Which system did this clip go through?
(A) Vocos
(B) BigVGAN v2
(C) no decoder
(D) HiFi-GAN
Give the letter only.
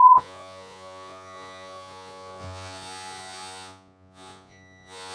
A